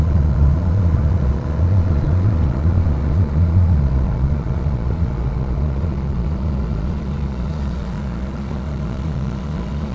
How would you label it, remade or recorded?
remade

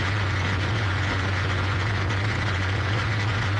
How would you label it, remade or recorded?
remade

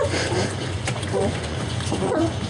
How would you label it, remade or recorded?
remade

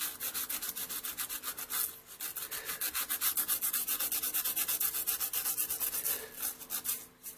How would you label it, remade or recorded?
recorded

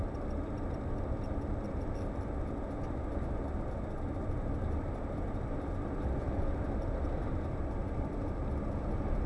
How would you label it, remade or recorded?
recorded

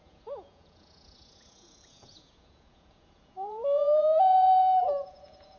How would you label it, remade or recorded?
remade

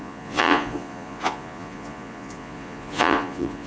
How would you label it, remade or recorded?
remade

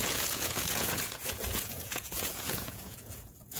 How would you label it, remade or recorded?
remade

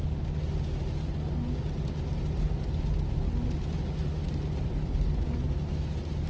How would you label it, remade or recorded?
recorded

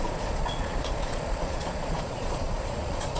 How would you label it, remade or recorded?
remade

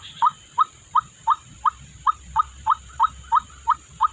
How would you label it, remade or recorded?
recorded